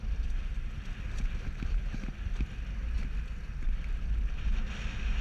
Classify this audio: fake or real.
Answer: real